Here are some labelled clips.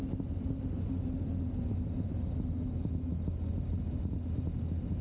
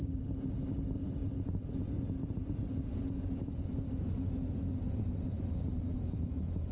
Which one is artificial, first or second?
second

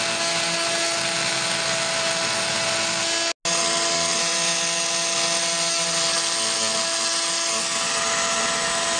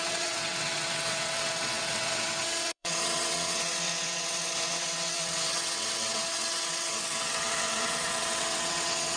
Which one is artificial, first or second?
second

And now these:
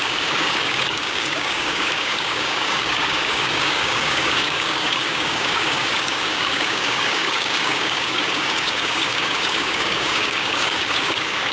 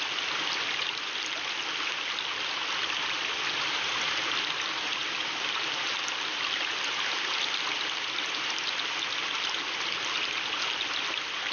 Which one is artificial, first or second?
first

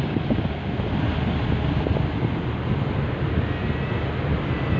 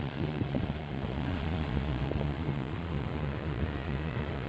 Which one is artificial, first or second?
second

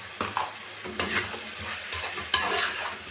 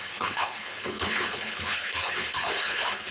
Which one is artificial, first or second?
second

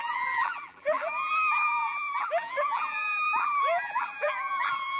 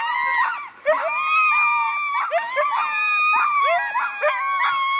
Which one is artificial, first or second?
first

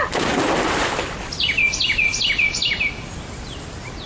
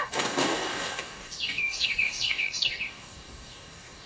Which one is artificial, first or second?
second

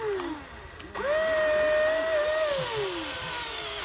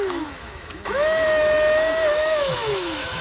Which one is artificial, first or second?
second